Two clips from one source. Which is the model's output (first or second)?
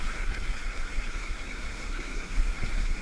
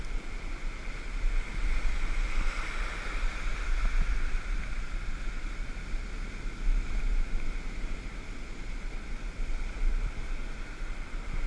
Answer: first